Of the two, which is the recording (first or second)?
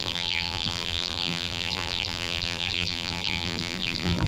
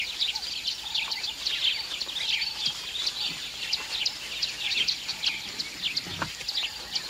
second